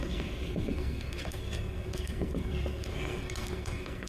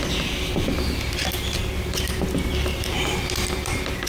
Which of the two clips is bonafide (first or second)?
second